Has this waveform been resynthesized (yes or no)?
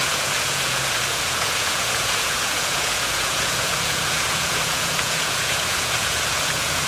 yes